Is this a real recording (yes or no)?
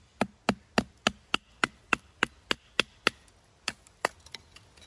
yes